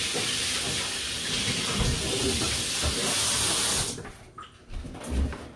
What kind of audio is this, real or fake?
real